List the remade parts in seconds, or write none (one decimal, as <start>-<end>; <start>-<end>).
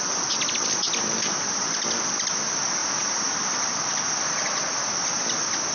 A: none